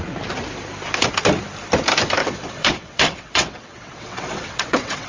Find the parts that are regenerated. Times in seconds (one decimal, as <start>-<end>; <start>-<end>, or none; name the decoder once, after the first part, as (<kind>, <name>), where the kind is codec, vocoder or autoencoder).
2.2-5.1 (vocoder, WaveNeXt)